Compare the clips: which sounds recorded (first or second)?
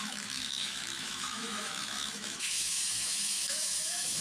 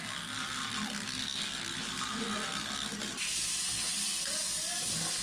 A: second